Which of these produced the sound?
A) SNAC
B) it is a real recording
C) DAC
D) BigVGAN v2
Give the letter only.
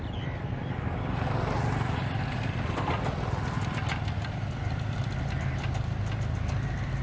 B